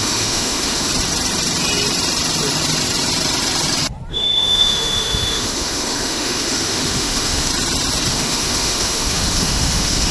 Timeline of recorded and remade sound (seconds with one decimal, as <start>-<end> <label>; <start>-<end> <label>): 0.0-0.9 remade; 0.9-4.1 recorded; 4.1-7.5 remade; 7.5-8.1 recorded; 8.1-10.1 remade